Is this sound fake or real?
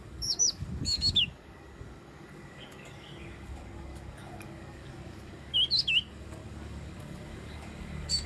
fake